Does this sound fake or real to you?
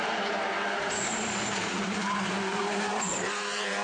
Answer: fake